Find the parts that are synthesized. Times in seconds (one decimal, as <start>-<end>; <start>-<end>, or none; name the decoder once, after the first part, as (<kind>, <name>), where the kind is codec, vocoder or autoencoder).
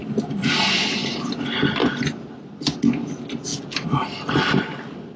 1.8-2.4 (vocoder, BigVGAN v2); 3.5-4.1